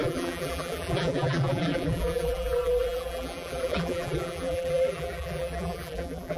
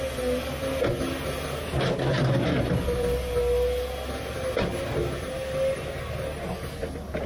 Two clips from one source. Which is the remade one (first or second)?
first